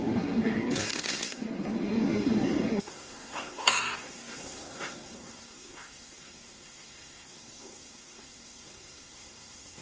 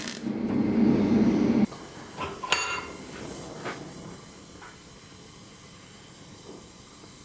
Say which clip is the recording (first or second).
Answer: second